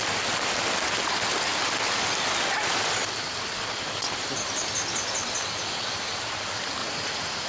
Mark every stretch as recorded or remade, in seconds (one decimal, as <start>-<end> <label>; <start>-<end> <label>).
0.0-6.8 recorded; 6.8-7.5 remade